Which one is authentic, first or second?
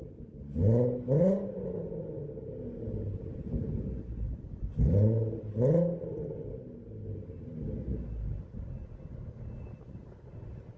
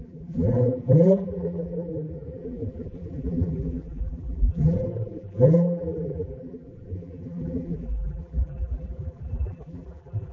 first